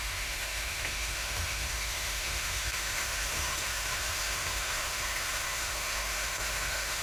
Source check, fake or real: fake